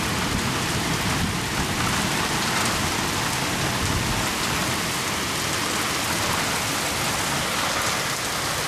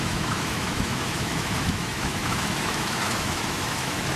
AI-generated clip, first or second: second